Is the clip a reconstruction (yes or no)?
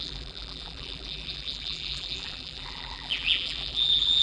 yes